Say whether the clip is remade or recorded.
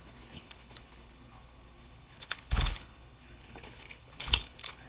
remade